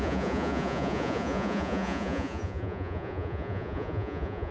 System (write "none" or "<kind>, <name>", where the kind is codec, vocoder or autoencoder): vocoder, Vocos